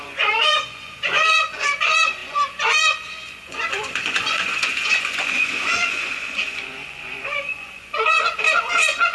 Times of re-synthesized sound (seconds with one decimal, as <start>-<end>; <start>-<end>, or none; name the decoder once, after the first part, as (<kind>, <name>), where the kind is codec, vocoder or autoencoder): 0.0-9.1 (vocoder, Vocos)